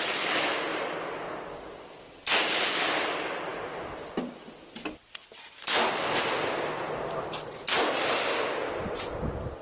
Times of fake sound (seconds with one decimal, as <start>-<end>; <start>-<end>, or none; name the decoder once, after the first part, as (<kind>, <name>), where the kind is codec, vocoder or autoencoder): 0.7-2.3 (vocoder, BigVGAN v2); 3.5-4.3